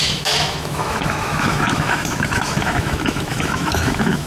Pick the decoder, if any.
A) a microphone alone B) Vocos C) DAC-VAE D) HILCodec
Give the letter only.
C